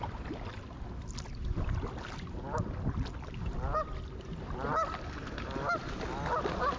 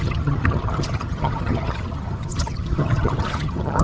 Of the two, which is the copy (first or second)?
second